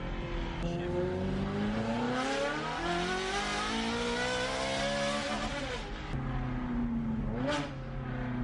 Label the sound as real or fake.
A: real